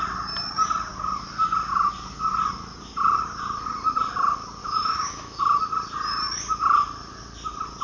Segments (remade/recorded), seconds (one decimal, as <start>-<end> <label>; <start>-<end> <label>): 0.0-4.6 recorded; 4.6-5.4 remade; 5.4-7.8 recorded